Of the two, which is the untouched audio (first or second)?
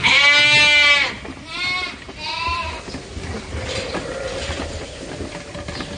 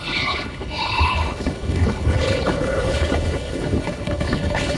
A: first